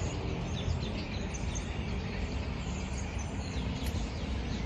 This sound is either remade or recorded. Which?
recorded